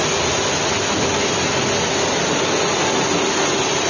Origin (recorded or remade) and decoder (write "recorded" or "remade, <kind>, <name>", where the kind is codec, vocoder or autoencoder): recorded